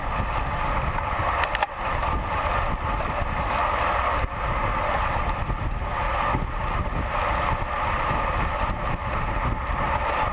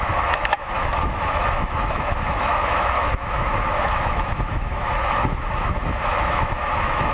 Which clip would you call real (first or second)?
first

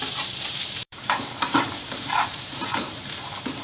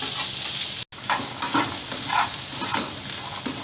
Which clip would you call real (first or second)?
second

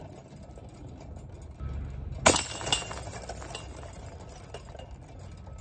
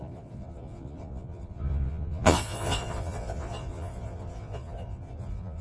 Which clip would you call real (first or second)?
first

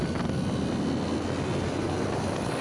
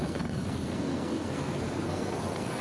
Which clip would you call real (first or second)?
first